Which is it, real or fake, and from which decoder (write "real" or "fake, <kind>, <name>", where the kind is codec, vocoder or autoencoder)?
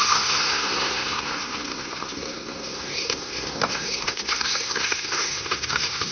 fake, codec, SNAC